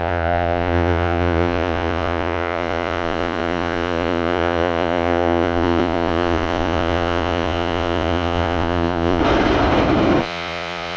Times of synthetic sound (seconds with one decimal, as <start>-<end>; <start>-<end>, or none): 0.0-9.2; 10.2-11.0